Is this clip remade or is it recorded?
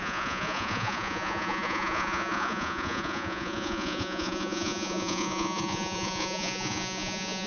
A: remade